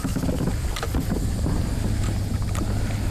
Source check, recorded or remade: recorded